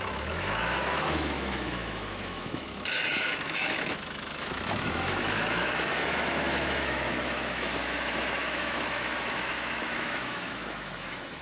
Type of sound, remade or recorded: remade